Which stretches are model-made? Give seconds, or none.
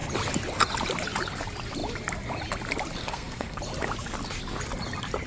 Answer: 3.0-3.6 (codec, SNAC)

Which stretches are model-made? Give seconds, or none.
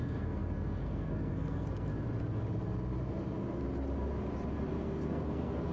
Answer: 0.0-1.9 (codec, SNAC); 4.7-5.7